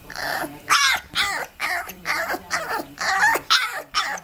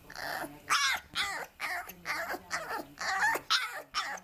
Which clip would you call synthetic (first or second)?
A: first